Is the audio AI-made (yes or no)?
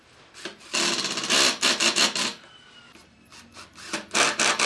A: no